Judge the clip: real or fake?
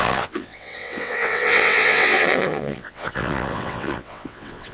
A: fake